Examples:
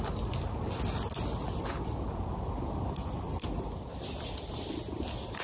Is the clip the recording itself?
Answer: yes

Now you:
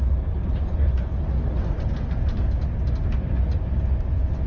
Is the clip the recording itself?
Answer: yes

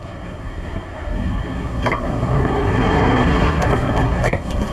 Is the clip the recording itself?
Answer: no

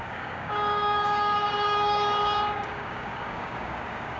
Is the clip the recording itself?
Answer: no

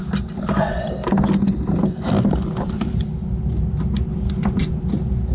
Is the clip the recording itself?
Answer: yes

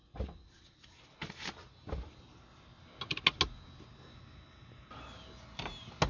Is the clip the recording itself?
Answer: yes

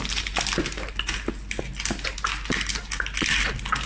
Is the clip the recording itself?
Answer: yes